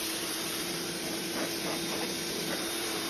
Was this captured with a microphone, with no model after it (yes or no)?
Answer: no